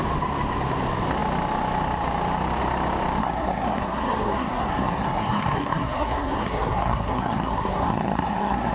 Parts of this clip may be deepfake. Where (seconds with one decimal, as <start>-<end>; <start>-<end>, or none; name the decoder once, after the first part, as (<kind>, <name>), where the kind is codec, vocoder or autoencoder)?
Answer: 3.2-8.7 (codec, SNAC)